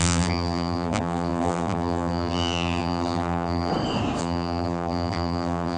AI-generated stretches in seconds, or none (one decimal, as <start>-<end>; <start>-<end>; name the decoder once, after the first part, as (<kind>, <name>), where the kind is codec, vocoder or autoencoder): 0.0-3.7 (vocoder, BigVGAN v2); 4.2-5.8